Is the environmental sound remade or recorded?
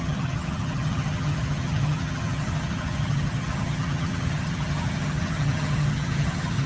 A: remade